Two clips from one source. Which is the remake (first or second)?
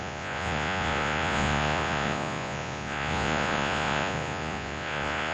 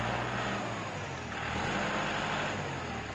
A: first